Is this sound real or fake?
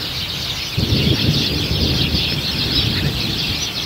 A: real